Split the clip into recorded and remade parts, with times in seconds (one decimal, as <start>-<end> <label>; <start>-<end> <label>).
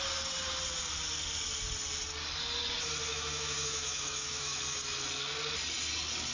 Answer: 0.0-3.1 recorded; 3.1-4.6 remade; 4.6-6.3 recorded